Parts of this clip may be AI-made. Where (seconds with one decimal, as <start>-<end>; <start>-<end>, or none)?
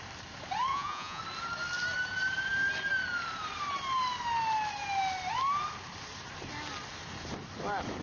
0.7-1.2